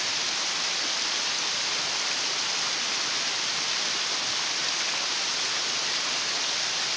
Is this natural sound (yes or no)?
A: yes